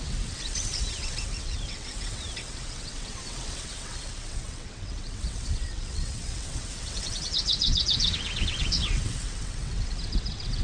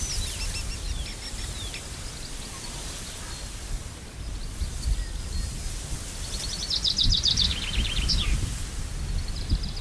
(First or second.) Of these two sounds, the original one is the second